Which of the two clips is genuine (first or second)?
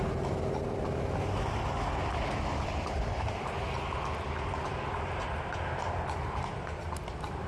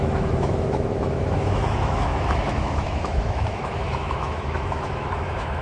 first